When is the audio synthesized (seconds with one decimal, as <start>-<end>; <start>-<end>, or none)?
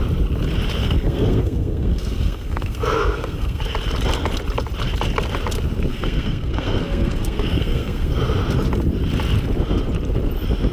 0.8-3.6; 5.9-8.2